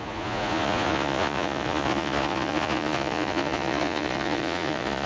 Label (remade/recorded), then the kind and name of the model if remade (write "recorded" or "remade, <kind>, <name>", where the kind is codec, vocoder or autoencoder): remade, vocoder, Vocos